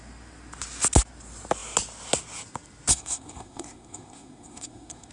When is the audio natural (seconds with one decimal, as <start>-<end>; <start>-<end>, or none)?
0.0-2.9